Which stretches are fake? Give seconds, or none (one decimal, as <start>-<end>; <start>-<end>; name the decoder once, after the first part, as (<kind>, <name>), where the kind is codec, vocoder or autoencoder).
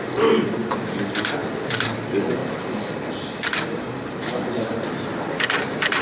none